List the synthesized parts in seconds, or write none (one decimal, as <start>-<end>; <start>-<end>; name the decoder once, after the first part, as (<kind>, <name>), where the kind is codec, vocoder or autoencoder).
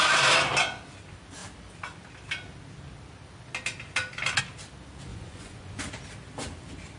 5.1-5.8 (vocoder, Vocos)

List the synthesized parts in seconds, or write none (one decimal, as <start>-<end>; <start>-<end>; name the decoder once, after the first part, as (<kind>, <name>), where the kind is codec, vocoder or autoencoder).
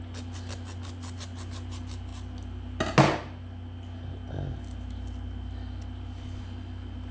none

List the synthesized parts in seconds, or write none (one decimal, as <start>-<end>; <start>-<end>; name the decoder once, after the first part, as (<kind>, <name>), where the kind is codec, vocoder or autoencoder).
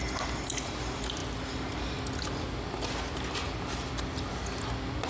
none